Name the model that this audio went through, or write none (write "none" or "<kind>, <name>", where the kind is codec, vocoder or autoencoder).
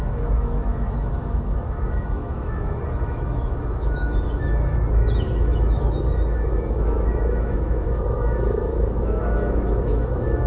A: autoencoder, DAC-VAE